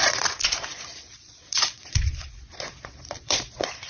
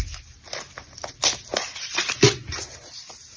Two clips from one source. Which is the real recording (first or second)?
second